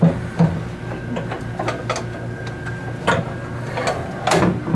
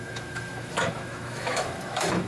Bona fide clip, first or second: first